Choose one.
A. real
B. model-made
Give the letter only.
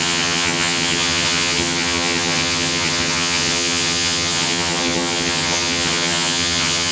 B